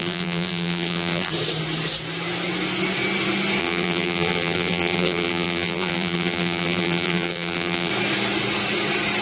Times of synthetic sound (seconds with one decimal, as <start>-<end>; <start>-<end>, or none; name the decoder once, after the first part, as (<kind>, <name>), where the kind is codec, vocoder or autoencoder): 0.0-1.3 (vocoder, BigVGAN v2); 3.6-7.9